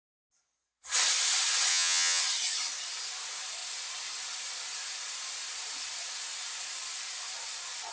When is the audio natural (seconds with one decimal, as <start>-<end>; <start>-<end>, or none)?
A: 0.0-1.7; 2.2-7.9